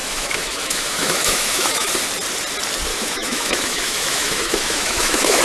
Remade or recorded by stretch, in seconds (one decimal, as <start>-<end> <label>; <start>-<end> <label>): 0.0-1.9 remade; 1.9-2.9 recorded; 2.9-5.4 remade

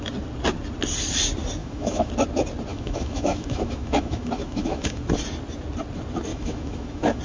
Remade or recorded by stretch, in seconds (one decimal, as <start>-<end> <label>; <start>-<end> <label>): 0.0-1.6 recorded; 1.6-2.1 remade; 2.1-2.7 recorded; 2.7-5.0 remade; 5.0-6.3 recorded; 6.3-7.2 remade

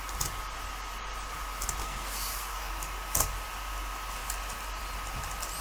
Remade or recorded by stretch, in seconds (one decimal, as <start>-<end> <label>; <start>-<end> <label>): 0.0-1.8 recorded; 1.8-2.7 remade; 2.7-5.6 recorded

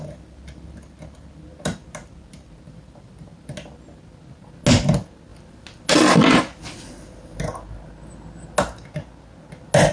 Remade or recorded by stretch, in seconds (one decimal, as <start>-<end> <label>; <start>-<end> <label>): 0.0-9.9 recorded